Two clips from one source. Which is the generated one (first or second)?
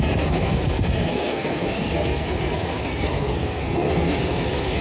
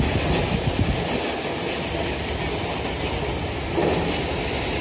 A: first